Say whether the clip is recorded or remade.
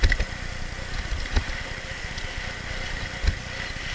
recorded